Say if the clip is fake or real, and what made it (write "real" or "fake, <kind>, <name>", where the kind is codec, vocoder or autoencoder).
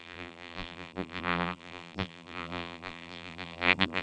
fake, vocoder, BigVGAN v2